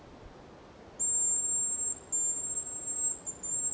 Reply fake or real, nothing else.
real